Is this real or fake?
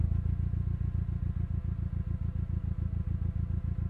real